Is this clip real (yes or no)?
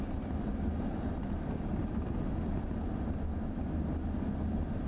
yes